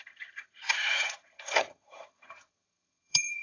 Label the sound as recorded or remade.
remade